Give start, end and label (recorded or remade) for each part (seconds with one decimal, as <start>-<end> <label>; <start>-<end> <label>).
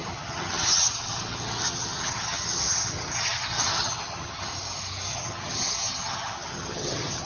0.0-4.5 remade; 4.5-5.1 recorded; 5.1-7.3 remade